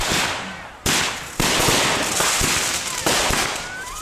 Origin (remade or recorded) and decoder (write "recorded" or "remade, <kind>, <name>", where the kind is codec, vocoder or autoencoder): recorded